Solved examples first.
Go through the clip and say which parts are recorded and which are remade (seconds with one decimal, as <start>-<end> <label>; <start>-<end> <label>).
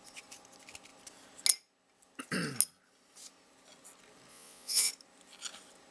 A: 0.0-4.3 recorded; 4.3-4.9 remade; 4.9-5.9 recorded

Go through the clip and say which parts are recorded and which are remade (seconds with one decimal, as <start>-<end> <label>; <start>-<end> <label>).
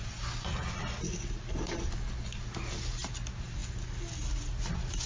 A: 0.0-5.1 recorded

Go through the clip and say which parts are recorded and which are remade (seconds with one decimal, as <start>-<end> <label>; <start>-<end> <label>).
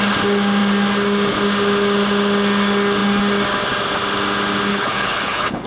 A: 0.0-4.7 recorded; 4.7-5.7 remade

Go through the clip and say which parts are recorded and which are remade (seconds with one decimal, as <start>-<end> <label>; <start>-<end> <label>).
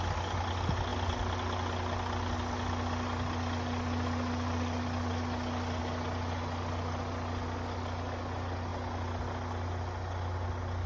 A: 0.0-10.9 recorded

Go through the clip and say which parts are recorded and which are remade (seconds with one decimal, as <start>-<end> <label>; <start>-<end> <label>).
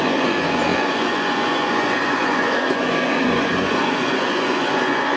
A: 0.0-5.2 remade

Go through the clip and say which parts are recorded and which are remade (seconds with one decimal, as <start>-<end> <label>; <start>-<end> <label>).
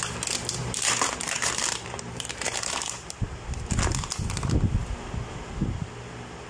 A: 0.0-0.6 recorded; 0.6-3.3 remade; 3.3-6.5 recorded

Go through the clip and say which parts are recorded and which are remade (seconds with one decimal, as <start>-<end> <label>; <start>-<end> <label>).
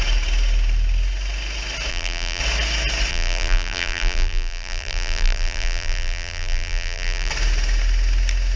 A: 0.0-1.9 recorded; 1.9-2.4 remade; 2.4-3.1 recorded; 3.1-7.3 remade; 7.3-8.6 recorded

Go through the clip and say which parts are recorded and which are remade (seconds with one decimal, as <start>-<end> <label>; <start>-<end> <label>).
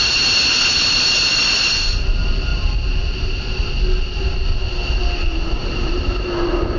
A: 0.0-6.8 recorded